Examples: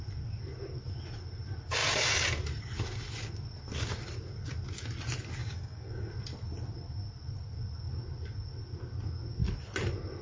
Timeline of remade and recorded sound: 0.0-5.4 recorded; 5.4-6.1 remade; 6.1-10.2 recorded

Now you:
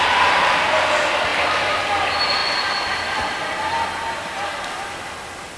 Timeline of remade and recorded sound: 0.0-5.6 recorded

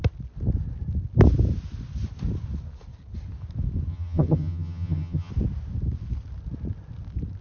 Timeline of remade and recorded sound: 0.0-3.9 recorded; 3.9-5.3 remade; 5.3-7.4 recorded